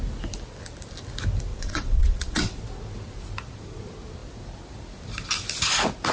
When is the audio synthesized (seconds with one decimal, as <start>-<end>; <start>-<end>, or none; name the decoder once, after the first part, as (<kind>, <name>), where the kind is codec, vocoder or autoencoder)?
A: 1.5-2.6 (vocoder, WaveNeXt)